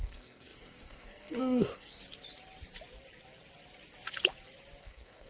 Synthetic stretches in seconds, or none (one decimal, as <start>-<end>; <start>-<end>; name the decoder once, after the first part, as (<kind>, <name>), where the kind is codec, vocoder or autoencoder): 0.0-2.0 (codec, SNAC); 4.8-5.3